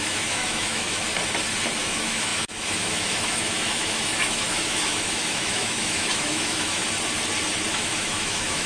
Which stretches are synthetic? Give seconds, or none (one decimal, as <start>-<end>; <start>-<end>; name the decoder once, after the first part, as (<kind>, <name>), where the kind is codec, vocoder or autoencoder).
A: 0.0-1.1 (autoencoder, DAC-VAE); 1.8-6.8; 7.7-8.7